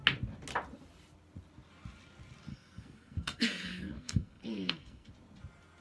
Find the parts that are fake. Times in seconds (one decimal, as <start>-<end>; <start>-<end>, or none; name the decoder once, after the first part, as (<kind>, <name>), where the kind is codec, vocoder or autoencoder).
2.5-5.1 (codec, SNAC)